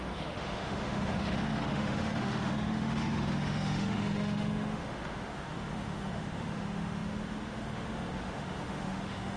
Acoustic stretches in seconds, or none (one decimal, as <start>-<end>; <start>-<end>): none